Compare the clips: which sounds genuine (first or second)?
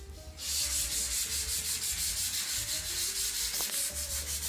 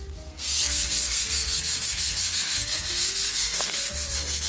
first